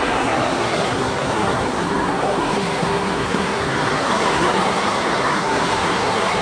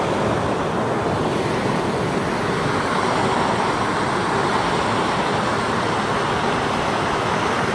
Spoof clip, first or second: first